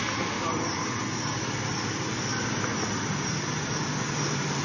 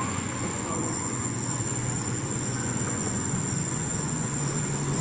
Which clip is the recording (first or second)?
first